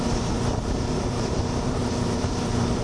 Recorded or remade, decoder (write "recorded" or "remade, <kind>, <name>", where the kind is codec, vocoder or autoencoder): remade, vocoder, BigVGAN v2